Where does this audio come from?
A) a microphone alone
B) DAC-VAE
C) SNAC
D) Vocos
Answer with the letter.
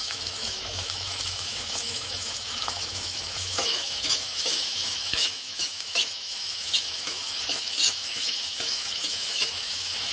B